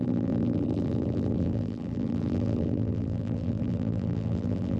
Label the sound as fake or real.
fake